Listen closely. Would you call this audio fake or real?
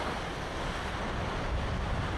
real